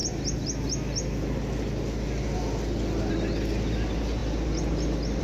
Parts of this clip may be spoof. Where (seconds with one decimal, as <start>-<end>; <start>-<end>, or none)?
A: 4.2-5.2

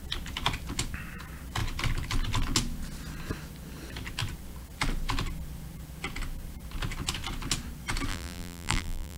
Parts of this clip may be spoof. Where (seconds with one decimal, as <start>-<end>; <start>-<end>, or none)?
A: 8.1-9.2